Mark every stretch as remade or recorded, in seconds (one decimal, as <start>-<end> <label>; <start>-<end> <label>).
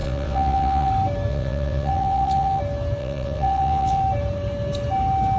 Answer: 0.0-0.9 remade; 0.9-1.3 recorded; 1.3-2.6 remade; 2.6-3.0 recorded; 3.0-4.0 remade; 4.0-5.4 recorded